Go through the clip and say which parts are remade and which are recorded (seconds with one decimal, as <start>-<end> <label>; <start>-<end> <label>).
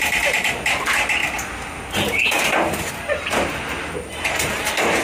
0.0-1.2 remade; 1.2-2.9 recorded; 2.9-5.0 remade